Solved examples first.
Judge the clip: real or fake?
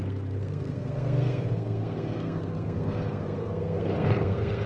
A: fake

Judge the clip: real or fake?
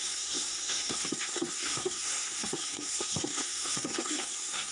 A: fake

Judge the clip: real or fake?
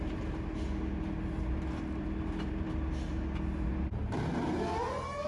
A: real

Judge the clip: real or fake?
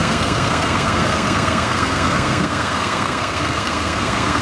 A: fake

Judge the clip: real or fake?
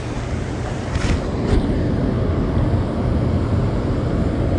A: real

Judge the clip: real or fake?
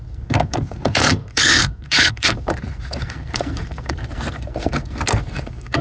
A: fake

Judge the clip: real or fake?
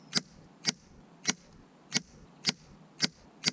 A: real